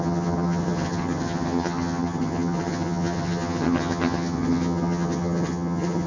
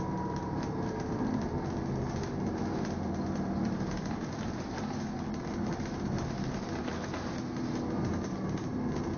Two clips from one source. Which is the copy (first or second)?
first